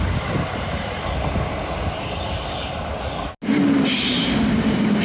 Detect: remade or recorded recorded